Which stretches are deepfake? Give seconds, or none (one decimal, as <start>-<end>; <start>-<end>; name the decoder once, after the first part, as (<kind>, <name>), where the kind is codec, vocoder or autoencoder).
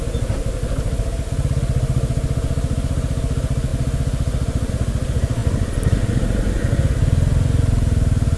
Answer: none